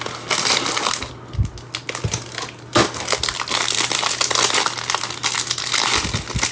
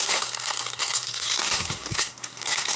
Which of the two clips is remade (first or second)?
second